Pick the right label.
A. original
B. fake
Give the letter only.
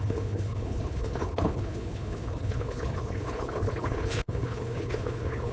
B